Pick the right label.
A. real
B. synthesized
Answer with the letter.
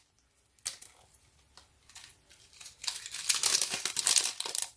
A